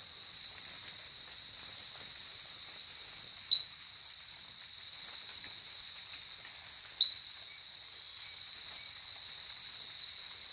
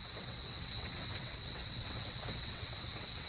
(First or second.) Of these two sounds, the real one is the first